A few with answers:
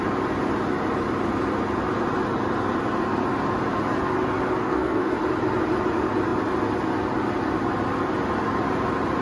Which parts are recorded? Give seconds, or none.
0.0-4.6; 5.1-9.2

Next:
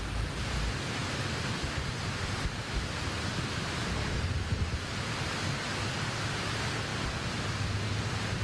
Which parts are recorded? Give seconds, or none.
0.0-3.3; 4.8-8.4